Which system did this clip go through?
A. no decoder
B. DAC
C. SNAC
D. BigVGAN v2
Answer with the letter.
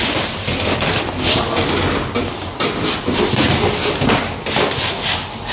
A